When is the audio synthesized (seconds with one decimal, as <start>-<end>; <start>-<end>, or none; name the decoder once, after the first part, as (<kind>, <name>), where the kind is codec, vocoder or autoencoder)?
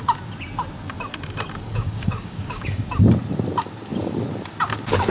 1.7-2.9 (codec, DAC)